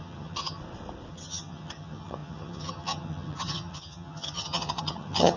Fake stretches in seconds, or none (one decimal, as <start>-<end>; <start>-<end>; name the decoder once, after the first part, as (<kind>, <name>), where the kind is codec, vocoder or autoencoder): 0.0-0.6 (vocoder, HiFi-GAN); 1.1-5.4

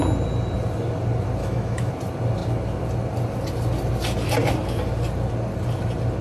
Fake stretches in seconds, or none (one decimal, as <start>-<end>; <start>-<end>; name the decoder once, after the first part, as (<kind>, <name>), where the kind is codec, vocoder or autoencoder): 1.4-1.9 (autoencoder, DAC-VAE)

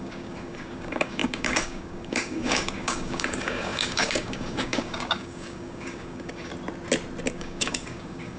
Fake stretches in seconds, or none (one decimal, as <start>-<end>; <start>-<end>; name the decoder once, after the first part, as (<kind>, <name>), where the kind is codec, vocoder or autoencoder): 0.0-6.5 (codec, DAC); 7.3-8.4

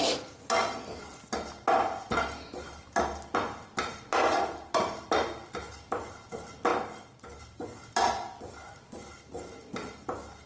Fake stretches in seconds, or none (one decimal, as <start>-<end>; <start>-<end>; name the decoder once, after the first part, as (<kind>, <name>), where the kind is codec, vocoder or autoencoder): none